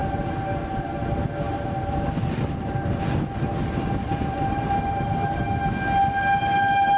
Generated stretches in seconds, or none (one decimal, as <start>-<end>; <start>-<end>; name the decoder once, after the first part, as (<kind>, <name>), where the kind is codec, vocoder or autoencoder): none